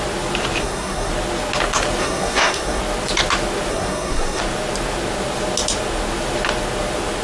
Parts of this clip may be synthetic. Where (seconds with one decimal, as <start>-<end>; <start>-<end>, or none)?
0.6-1.1; 2.0-2.8; 3.7-4.4